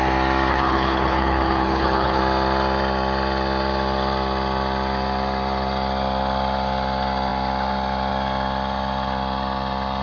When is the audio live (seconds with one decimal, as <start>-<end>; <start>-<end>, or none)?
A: 0.0-0.5; 2.2-10.0